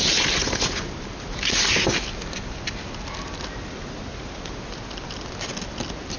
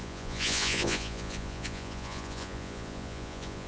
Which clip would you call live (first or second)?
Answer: first